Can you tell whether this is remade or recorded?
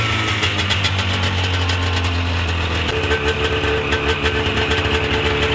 recorded